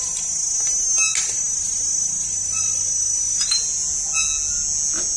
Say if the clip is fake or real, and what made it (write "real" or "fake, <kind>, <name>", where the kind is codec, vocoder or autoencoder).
real